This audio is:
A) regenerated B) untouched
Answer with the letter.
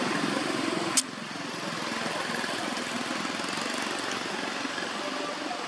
B